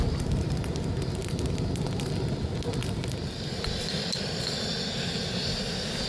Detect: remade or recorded recorded